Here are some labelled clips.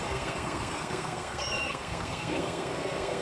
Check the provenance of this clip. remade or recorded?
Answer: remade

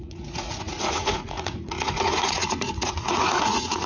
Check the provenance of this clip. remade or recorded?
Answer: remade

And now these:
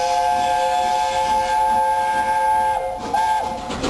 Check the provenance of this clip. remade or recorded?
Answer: recorded